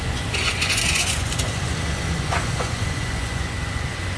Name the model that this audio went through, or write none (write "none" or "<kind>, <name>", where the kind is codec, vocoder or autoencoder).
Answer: vocoder, Vocos